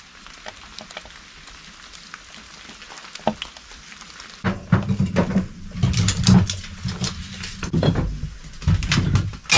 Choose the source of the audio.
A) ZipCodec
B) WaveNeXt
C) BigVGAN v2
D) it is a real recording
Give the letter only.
D